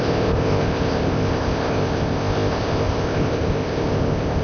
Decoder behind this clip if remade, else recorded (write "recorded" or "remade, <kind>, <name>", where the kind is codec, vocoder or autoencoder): remade, codec, ZipCodec